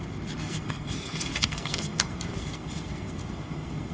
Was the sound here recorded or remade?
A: remade